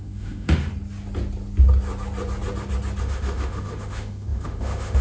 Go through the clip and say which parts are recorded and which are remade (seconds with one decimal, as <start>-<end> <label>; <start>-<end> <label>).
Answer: 0.0-0.7 remade; 0.7-3.0 recorded; 3.0-5.0 remade